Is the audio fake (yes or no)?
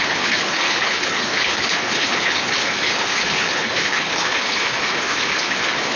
yes